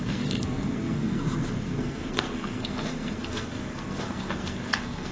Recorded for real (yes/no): no